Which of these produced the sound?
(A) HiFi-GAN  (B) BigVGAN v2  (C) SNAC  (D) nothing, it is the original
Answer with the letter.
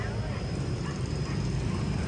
D